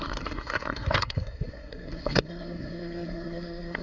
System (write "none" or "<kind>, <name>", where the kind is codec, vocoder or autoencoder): codec, SNAC